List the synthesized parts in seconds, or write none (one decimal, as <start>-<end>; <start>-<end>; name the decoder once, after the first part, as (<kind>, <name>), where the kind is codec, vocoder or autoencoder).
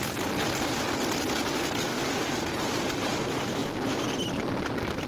none